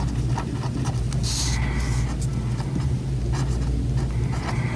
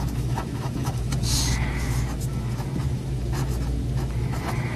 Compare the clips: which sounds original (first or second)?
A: first